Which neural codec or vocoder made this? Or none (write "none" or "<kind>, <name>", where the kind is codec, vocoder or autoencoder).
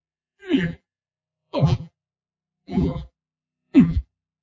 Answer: vocoder, BigVGAN v2